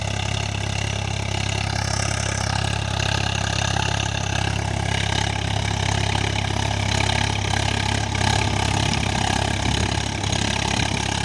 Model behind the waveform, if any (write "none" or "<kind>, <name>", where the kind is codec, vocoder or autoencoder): none